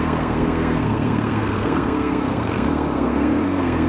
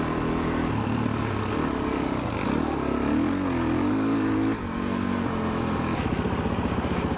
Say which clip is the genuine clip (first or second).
second